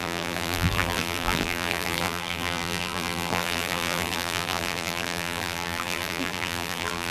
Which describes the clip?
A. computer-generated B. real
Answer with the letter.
A